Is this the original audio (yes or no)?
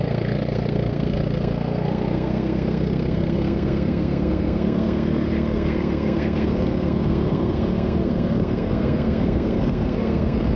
no